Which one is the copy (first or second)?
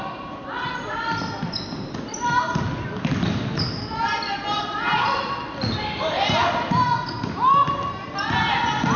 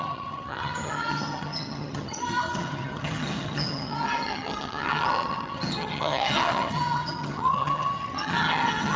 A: second